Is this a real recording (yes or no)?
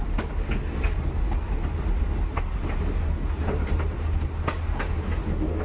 yes